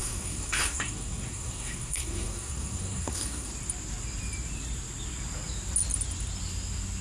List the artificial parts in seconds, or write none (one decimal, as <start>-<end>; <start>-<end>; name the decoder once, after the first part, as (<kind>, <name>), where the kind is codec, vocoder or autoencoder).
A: 0.0-3.5 (codec, SNAC)